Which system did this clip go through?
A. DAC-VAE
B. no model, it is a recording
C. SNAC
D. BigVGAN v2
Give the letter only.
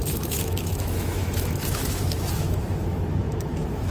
A